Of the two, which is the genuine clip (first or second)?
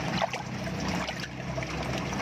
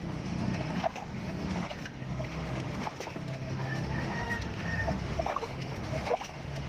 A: first